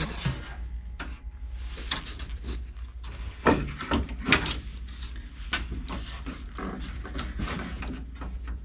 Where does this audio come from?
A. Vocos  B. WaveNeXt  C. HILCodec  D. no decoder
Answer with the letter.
D